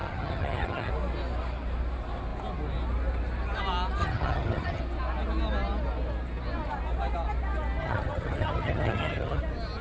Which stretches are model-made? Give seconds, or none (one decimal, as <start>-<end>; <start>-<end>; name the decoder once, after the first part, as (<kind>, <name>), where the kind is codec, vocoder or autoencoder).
0.0-0.9 (vocoder, HiFi-GAN); 4.0-4.8; 7.8-9.4